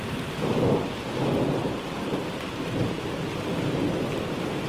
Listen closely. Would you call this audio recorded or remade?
recorded